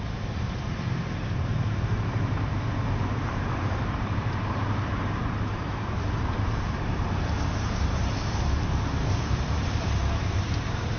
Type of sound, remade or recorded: remade